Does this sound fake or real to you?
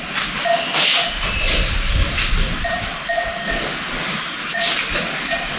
real